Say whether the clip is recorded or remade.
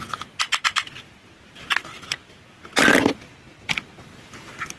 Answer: recorded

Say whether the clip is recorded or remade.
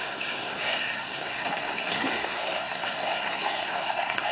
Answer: remade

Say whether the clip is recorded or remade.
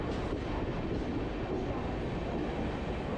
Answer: recorded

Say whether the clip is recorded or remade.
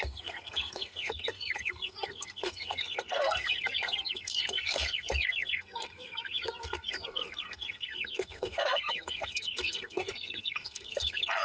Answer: remade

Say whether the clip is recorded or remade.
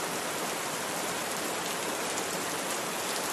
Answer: recorded